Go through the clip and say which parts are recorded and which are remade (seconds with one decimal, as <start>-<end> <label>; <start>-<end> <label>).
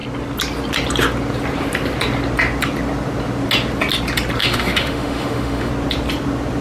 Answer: 0.0-4.4 recorded; 4.4-5.7 remade; 5.7-6.6 recorded